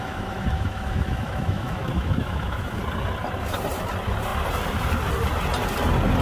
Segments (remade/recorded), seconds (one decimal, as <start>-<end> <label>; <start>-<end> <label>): 0.0-2.8 remade; 2.8-6.2 recorded